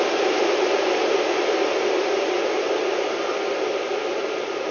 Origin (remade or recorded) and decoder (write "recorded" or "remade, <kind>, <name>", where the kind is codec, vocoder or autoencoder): recorded